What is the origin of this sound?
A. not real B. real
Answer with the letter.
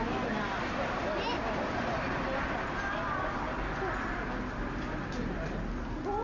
B